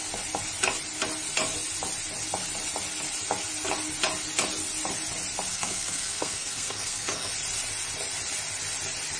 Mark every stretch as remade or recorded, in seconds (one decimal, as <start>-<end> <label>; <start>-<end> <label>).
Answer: 0.0-5.5 recorded; 5.5-7.3 remade; 7.3-9.2 recorded